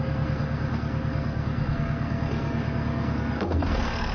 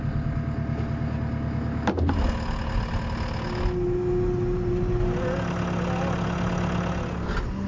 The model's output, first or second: first